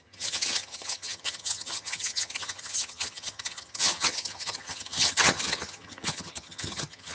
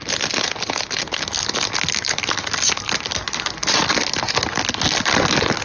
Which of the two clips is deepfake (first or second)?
first